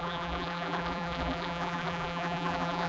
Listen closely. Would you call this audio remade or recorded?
remade